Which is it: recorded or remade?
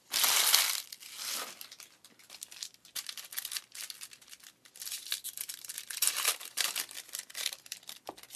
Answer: recorded